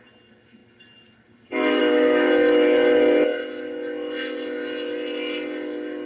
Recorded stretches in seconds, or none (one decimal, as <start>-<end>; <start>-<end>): 0.0-6.1